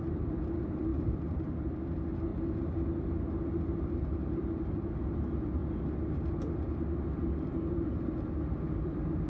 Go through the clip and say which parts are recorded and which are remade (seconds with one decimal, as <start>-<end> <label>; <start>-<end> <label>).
0.0-2.3 remade; 2.3-3.8 recorded; 3.8-5.6 remade; 5.6-8.8 recorded; 8.8-9.3 remade